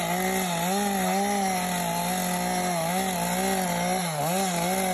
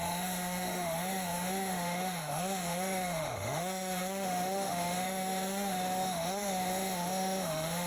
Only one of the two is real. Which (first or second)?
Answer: first